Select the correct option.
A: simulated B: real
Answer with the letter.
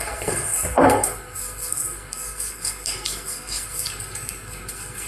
A